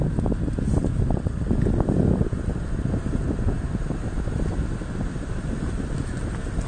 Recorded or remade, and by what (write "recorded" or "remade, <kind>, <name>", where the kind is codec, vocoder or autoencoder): recorded